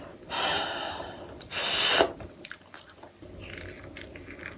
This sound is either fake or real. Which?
real